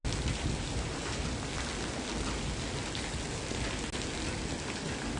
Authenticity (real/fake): real